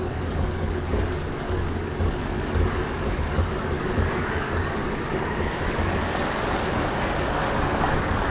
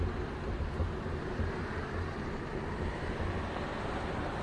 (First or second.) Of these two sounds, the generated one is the first